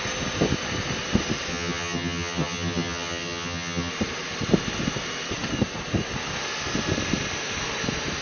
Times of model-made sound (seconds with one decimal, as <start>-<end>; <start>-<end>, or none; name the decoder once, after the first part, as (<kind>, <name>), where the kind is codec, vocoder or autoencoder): 1.5-3.9 (vocoder, HiFi-GAN)